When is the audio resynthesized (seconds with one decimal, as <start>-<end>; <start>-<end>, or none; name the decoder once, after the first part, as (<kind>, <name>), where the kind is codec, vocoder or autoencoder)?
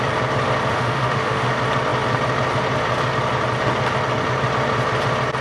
0.7-1.5 (autoencoder, DAC-VAE)